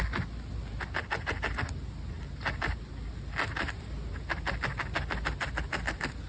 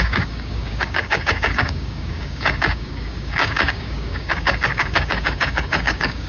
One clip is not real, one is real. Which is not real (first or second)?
second